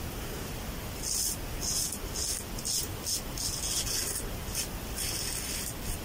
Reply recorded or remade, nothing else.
recorded